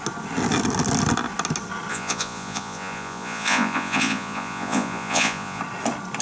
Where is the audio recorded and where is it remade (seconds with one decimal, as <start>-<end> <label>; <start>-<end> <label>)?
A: 0.0-1.9 recorded; 1.9-5.6 remade; 5.6-6.2 recorded